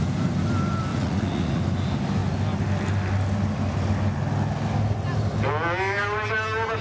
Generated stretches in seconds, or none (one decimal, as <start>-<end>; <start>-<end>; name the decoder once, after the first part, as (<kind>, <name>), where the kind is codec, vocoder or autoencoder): 0.9-1.6 (vocoder, Vocos)